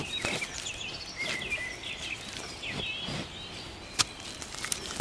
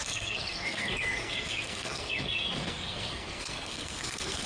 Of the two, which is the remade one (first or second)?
second